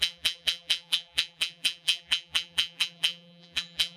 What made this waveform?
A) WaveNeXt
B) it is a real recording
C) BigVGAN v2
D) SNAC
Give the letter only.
C